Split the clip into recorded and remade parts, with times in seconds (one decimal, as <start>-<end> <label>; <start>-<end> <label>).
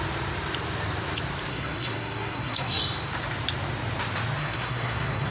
0.0-1.5 recorded; 1.5-2.8 remade; 2.8-4.4 recorded; 4.4-5.3 remade